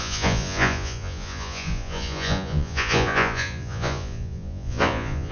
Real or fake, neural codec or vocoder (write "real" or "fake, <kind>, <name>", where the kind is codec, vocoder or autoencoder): fake, vocoder, Vocos